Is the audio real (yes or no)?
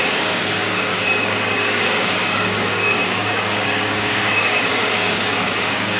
no